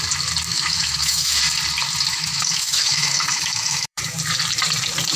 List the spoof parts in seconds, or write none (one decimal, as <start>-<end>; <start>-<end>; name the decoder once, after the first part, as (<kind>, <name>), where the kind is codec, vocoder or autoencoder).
0.5-1.4 (autoencoder, DAC-VAE); 2.1-4.0